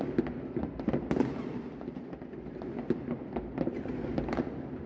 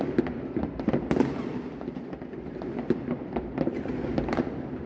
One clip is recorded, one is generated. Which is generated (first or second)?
second